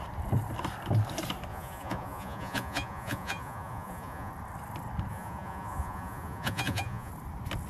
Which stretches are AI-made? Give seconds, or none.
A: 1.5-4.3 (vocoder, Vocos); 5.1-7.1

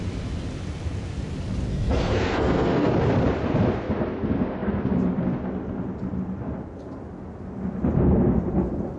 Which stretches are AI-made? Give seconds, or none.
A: 1.7-2.9 (codec, SNAC)

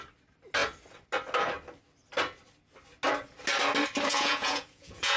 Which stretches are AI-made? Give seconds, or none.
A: 4.1-5.2 (vocoder, Vocos)

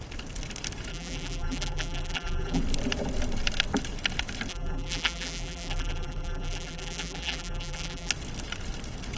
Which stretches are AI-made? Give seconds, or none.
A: 0.9-2.6 (vocoder, BigVGAN v2); 4.5-8.1